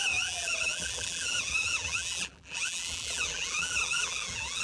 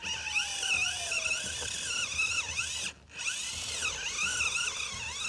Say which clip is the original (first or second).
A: second